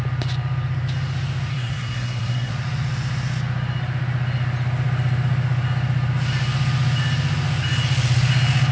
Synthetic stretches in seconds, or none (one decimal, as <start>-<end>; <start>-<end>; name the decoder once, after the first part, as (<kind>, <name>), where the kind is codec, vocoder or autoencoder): 1.5-2.5 (codec, SNAC)